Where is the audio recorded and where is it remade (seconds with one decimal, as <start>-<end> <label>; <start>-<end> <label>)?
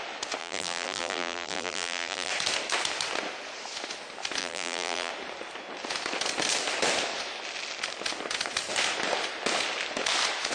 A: 0.0-0.4 recorded; 0.4-2.3 remade; 2.3-4.4 recorded; 4.4-5.1 remade; 5.1-10.5 recorded